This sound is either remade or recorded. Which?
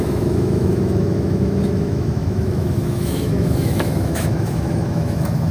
remade